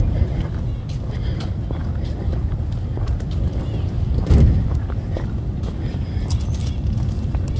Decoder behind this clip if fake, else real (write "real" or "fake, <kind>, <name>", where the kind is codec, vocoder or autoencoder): real